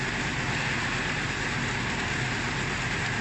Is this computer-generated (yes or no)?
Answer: no